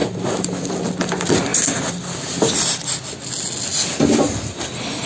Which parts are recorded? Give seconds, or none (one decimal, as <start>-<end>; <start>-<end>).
0.7-5.1